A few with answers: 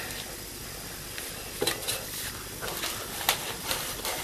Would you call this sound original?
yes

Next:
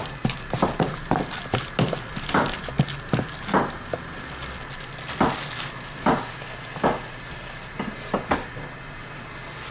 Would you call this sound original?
yes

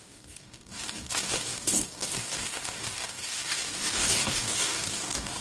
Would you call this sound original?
no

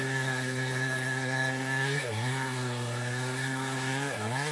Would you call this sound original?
no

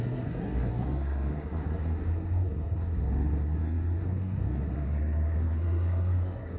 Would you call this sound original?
no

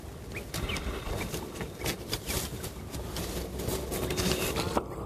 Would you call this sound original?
yes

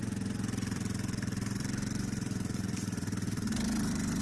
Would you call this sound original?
no